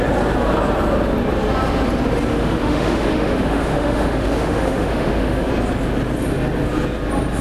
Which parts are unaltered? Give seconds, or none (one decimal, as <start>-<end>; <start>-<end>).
0.0-2.3; 5.5-7.4